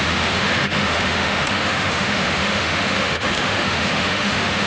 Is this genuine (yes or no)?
no